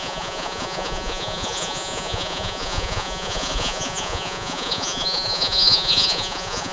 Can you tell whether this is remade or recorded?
remade